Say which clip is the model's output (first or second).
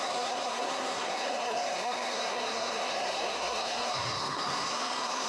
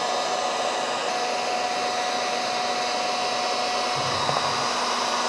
first